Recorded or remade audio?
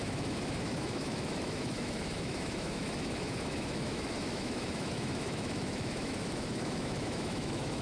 remade